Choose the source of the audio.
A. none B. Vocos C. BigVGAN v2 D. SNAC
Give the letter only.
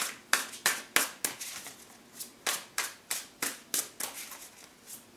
A